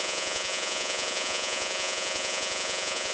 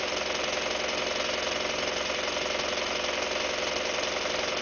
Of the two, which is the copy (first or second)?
first